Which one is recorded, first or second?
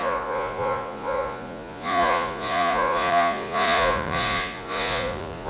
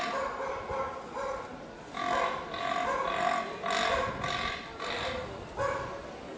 second